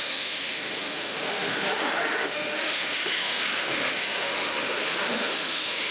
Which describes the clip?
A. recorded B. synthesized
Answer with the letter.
B